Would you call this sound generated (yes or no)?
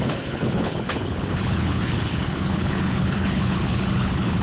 yes